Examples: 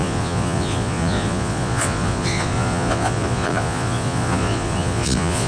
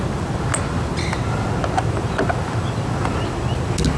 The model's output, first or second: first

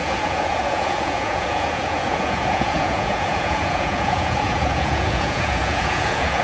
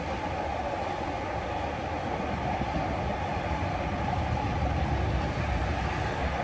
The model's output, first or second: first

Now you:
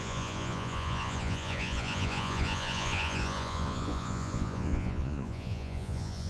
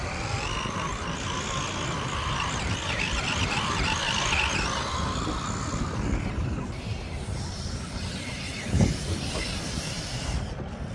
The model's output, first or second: first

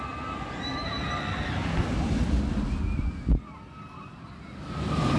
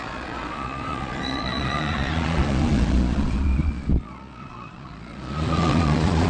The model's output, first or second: second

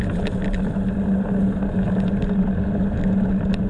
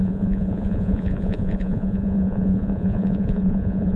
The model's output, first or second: second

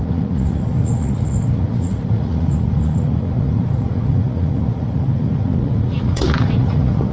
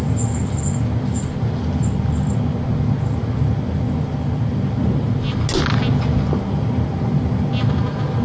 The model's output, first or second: first